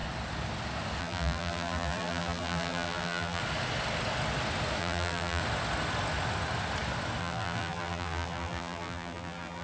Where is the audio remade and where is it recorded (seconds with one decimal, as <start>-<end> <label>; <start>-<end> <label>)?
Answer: 0.0-1.0 recorded; 1.0-3.4 remade; 3.4-4.8 recorded; 4.8-5.4 remade; 5.4-7.2 recorded; 7.2-9.6 remade

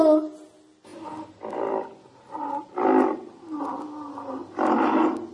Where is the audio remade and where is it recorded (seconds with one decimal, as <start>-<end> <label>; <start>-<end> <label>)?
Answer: 0.0-5.3 recorded

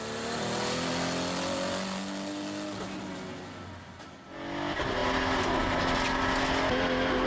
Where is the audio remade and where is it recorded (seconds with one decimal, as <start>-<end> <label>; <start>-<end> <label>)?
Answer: 0.0-7.3 recorded

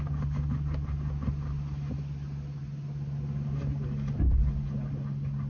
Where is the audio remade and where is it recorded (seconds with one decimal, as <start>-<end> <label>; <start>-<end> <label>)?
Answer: 0.0-5.5 recorded

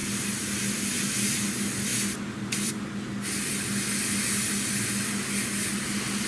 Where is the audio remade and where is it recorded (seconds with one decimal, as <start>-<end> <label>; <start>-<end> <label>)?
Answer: 0.0-6.3 recorded

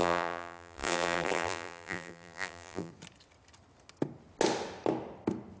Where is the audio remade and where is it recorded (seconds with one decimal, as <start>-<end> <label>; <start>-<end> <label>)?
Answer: 0.0-2.9 remade; 2.9-5.6 recorded

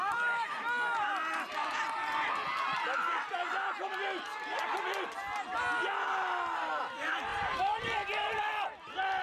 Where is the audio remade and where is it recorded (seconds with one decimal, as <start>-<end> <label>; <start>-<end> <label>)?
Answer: 0.0-7.3 recorded; 7.3-8.4 remade; 8.4-9.2 recorded

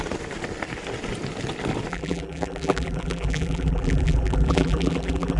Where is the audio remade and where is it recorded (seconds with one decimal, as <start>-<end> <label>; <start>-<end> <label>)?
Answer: 0.0-1.9 recorded; 1.9-5.4 remade